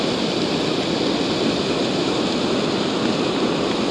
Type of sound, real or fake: real